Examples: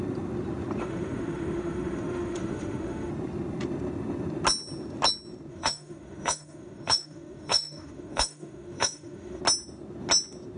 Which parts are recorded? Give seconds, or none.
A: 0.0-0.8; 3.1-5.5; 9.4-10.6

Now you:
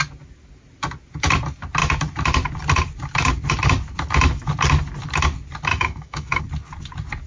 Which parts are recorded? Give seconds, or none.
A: 0.0-5.7; 6.4-7.3

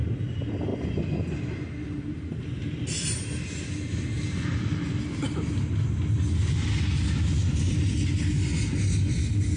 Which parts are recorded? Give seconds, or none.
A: 0.0-9.6